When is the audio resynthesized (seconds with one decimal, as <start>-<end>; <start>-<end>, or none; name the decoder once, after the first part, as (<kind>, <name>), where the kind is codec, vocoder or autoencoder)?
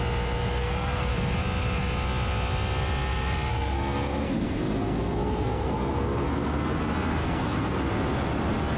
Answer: 0.6-1.1 (codec, SNAC); 3.5-6.8; 7.2-7.8